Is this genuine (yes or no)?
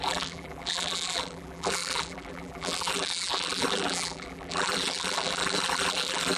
no